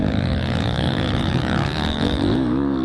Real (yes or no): no